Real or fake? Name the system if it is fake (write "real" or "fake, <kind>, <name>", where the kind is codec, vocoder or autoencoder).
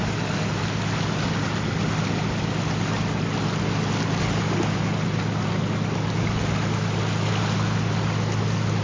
real